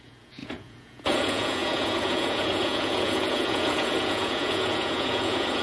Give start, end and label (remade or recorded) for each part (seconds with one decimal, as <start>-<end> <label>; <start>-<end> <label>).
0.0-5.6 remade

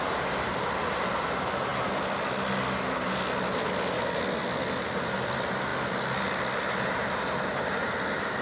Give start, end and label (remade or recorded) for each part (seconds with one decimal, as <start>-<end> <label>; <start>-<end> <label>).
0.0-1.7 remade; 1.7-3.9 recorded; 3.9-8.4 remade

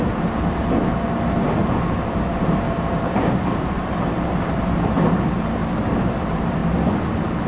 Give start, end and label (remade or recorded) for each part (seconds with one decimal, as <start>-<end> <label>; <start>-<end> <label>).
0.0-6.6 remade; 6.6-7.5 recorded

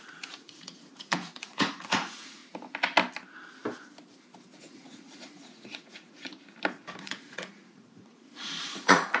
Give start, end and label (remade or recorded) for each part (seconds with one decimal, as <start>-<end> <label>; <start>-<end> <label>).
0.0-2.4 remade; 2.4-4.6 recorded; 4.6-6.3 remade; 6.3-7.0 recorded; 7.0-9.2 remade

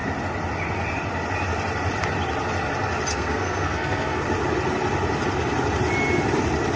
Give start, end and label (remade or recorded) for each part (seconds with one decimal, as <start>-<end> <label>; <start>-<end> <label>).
0.0-3.1 recorded; 3.1-4.2 remade; 4.2-6.8 recorded

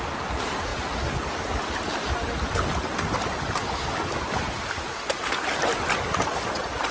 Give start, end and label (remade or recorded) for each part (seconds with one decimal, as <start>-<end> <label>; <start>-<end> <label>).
0.0-6.9 recorded